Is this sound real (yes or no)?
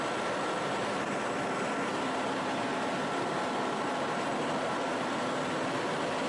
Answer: yes